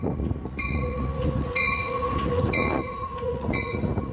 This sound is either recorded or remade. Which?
remade